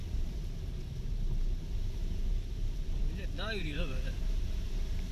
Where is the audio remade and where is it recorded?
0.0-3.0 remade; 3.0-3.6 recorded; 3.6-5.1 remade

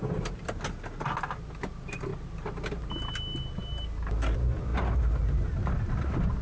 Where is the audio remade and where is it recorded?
0.0-6.4 recorded

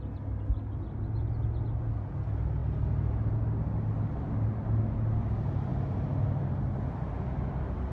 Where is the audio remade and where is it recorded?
0.0-7.9 recorded

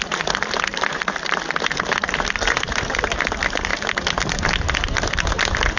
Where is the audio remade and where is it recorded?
0.0-0.7 recorded; 0.7-2.9 remade; 2.9-5.8 recorded

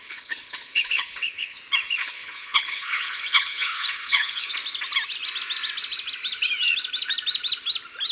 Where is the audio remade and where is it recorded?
0.0-1.6 remade; 1.6-2.0 recorded; 2.0-4.5 remade; 4.5-8.1 recorded